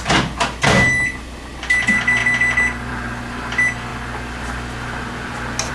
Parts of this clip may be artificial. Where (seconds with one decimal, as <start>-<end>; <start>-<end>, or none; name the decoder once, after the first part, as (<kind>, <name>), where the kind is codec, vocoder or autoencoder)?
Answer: none

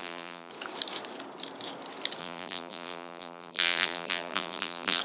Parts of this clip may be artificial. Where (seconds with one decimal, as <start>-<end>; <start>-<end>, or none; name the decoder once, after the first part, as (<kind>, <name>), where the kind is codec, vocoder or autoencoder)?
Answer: 0.0-0.5 (vocoder, BigVGAN v2); 2.2-5.0

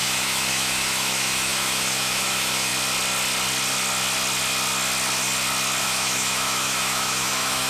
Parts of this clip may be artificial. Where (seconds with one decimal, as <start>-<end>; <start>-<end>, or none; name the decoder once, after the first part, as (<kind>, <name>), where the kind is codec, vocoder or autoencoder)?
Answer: 0.0-2.7 (autoencoder, DAC-VAE); 5.8-7.7